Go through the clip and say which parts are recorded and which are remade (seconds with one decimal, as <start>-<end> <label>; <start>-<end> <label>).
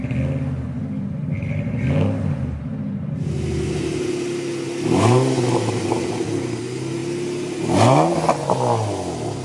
0.0-9.4 recorded